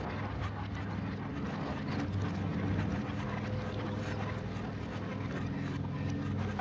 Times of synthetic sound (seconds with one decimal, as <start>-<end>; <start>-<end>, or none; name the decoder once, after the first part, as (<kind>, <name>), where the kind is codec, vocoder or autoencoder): none